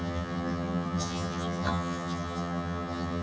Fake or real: fake